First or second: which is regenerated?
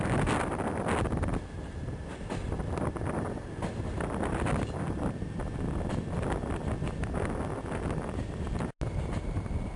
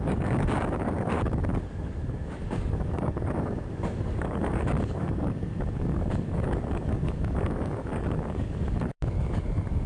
second